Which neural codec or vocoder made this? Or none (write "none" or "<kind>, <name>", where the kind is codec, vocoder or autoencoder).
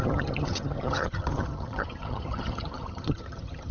vocoder, HiFi-GAN